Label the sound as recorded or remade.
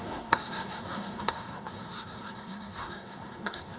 remade